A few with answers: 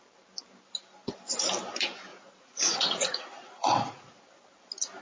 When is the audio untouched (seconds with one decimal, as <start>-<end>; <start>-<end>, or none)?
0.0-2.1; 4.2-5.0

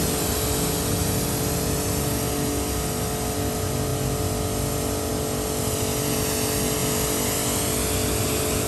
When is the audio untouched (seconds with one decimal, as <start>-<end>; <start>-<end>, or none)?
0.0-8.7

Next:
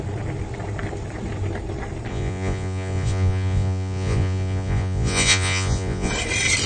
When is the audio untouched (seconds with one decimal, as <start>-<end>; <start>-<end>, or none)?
0.0-2.1; 6.1-6.7

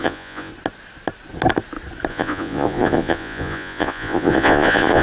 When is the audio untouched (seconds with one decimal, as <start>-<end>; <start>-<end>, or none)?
0.5-2.1

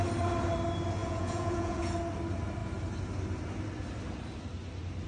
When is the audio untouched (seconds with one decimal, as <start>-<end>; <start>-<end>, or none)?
0.0-1.0; 1.9-5.1